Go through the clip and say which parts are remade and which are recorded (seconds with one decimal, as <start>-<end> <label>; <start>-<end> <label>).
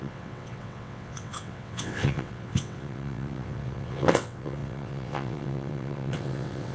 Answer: 0.0-6.7 remade